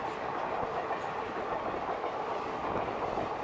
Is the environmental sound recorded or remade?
recorded